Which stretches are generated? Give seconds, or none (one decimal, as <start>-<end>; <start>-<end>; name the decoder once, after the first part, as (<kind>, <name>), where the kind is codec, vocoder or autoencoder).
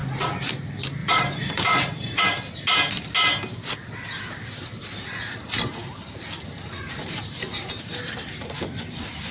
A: 0.0-0.5 (vocoder, BigVGAN v2); 1.0-2.2; 5.8-9.3